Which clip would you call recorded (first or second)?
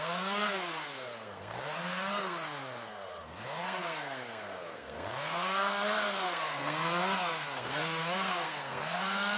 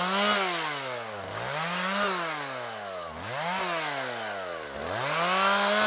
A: second